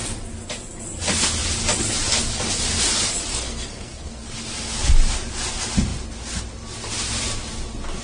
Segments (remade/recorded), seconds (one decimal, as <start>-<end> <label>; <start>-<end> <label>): 0.0-3.3 recorded; 3.3-4.3 remade; 4.3-8.0 recorded